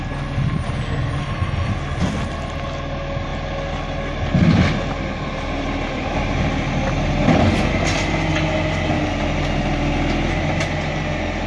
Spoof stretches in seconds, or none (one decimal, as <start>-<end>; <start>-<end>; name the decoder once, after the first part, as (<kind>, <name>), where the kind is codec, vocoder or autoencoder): 1.2-1.7 (codec, SNAC)